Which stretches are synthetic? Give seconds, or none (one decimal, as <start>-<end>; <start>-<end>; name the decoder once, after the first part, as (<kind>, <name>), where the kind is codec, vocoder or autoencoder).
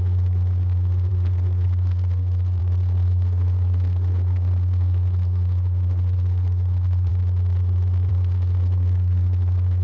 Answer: 0.0-7.1 (codec, SNAC); 8.1-9.8